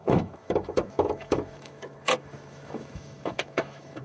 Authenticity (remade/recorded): remade